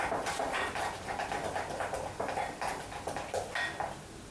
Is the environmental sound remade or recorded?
recorded